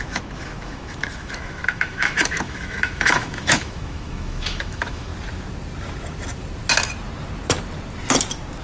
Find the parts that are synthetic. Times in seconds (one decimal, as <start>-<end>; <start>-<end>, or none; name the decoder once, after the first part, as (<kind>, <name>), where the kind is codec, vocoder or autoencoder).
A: 0.0-5.1 (autoencoder, DAC-VAE)